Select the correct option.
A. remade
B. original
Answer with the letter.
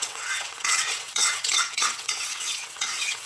A